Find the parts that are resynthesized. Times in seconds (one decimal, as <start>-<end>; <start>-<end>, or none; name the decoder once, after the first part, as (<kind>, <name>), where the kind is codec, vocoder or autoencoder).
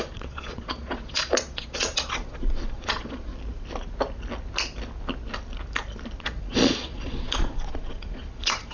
0.0-3.3 (vocoder, Vocos); 6.2-8.7